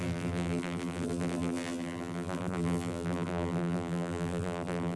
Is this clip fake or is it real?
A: fake